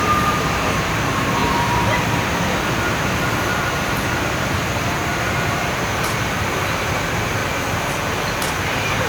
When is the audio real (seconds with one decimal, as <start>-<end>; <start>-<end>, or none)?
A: 7.4-8.4